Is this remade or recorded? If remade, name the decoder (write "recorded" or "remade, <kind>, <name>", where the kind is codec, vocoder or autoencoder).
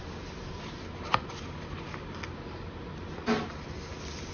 recorded